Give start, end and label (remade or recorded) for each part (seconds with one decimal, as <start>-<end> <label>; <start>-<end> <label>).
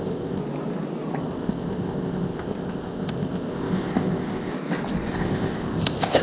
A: 0.0-0.4 remade; 0.4-1.2 recorded; 1.2-4.5 remade; 4.5-5.1 recorded; 5.1-6.2 remade